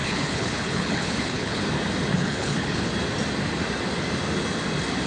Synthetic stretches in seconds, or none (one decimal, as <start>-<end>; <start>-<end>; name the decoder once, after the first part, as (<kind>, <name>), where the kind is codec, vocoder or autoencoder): 0.0-1.6 (codec, HILCodec); 2.1-2.9